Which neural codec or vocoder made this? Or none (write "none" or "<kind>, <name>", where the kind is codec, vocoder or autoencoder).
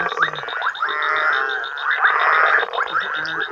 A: none